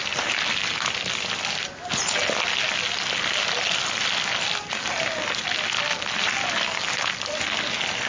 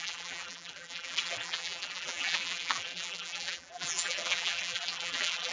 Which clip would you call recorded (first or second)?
first